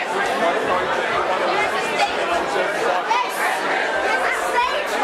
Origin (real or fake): real